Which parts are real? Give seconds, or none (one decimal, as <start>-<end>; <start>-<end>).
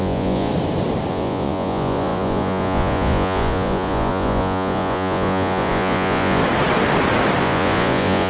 0.5-1.1; 6.4-7.4